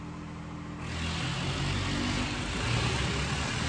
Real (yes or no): yes